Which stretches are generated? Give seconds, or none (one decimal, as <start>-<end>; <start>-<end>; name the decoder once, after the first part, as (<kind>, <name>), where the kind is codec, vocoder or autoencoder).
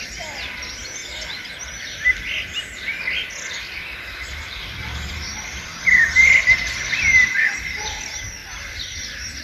0.0-8.4 (vocoder, BigVGAN v2)